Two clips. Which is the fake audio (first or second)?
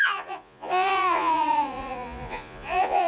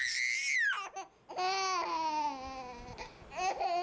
first